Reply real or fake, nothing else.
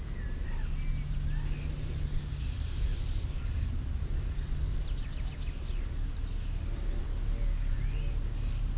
real